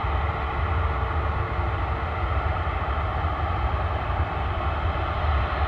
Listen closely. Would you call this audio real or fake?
real